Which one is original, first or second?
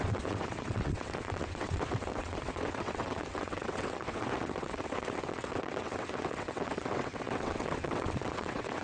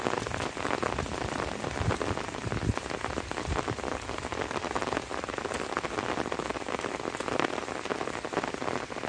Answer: second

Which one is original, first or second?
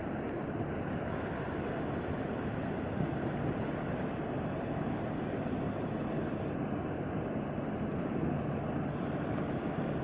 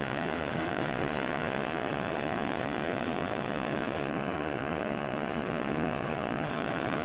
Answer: first